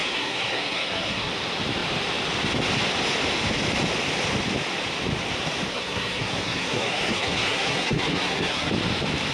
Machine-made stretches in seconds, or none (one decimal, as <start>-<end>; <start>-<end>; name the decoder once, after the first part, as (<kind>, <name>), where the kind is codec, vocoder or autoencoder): 0.0-1.3 (codec, SNAC); 5.7-8.7